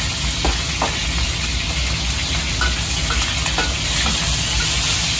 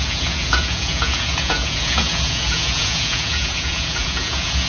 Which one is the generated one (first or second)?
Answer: second